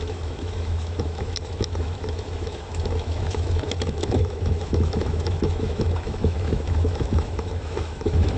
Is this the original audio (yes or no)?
no